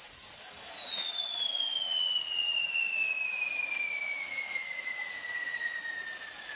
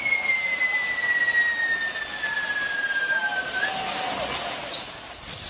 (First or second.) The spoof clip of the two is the first